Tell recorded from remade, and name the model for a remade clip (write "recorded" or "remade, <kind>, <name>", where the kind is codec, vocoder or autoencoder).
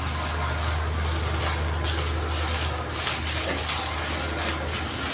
recorded